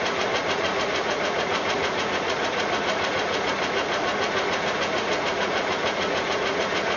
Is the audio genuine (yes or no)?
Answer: no